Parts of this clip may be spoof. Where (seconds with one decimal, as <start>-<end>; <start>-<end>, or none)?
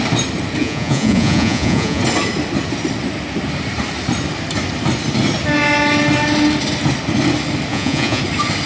0.6-2.0; 7.7-8.2